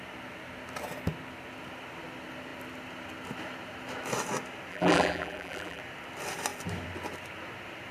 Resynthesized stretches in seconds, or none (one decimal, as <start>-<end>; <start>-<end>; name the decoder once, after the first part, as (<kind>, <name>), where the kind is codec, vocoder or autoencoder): 4.7-5.8 (vocoder, BigVGAN v2)